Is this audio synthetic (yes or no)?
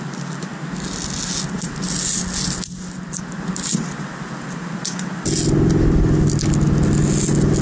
no